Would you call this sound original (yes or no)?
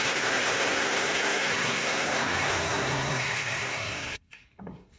no